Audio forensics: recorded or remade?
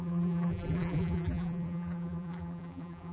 remade